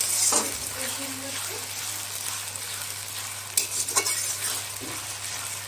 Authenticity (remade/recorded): recorded